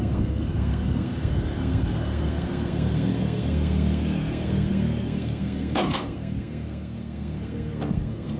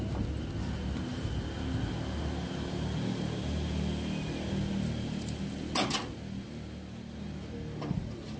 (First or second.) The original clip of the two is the second